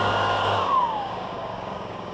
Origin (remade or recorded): remade